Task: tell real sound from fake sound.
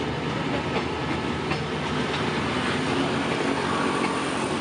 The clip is real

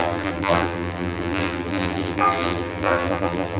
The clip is fake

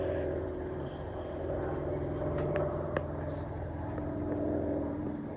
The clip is fake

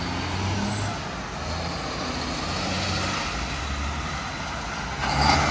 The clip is real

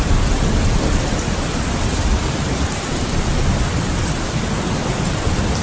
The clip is fake